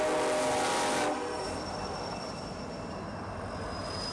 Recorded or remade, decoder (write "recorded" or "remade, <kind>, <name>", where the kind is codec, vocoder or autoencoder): recorded